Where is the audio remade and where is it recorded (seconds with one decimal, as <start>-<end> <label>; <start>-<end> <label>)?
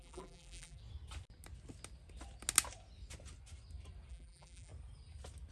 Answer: 0.0-0.8 remade; 0.8-4.1 recorded; 4.1-4.7 remade; 4.7-5.5 recorded